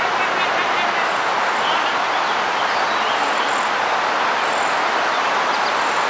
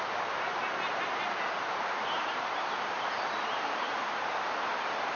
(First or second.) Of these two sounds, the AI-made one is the second